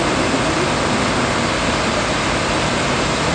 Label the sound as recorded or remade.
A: recorded